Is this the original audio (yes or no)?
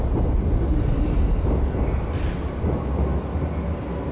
yes